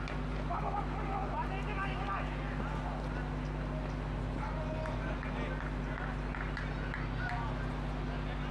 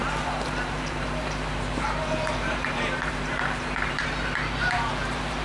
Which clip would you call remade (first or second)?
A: second